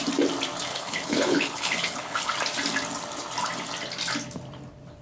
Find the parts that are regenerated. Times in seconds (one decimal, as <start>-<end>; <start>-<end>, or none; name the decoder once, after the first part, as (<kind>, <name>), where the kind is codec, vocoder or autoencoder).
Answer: 0.7-2.3 (codec, HILCodec)